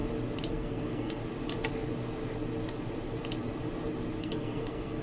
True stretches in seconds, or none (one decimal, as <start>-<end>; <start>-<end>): 0.0-0.5; 1.2-4.2